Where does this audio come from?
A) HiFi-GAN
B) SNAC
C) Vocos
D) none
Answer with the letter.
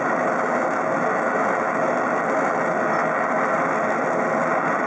D